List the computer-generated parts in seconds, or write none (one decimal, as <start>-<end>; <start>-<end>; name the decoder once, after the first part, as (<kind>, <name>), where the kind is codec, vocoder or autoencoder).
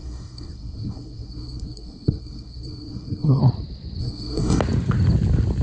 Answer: 0.0-3.4 (codec, SNAC); 4.0-4.6